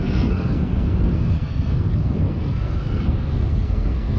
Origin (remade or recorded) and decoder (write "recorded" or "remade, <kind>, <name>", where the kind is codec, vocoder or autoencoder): remade, codec, SNAC